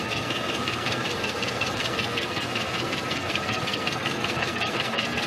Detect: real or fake fake